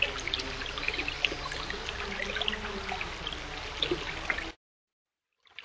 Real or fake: real